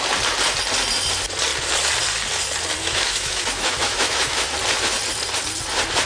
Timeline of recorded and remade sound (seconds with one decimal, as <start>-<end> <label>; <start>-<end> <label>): 0.0-2.8 recorded; 2.8-4.5 remade; 4.5-6.1 recorded